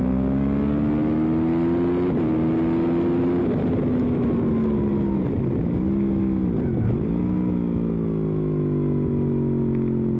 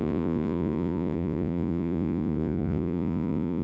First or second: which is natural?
first